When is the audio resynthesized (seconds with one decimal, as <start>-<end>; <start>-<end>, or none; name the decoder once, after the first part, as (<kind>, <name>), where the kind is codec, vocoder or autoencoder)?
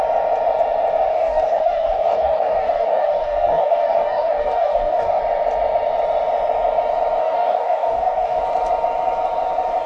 1.1-5.2 (codec, DAC); 7.2-8.4